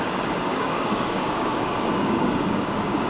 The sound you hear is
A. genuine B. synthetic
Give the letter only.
B